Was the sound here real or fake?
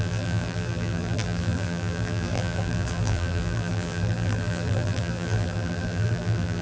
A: fake